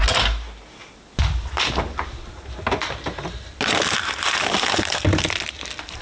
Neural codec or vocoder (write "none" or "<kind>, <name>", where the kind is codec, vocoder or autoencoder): none